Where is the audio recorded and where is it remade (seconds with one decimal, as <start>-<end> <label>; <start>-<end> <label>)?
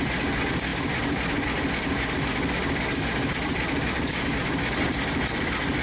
0.0-0.7 recorded; 0.7-4.2 remade; 4.2-5.8 recorded